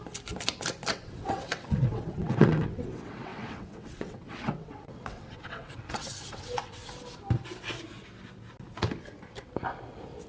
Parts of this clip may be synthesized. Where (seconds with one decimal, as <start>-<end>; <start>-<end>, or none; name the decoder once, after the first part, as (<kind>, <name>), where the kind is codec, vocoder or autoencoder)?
0.9-6.8 (vocoder, WaveNeXt)